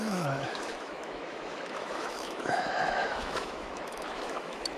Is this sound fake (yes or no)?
yes